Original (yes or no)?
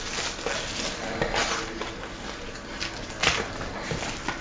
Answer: yes